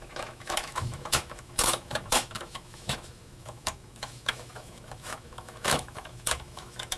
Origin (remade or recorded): remade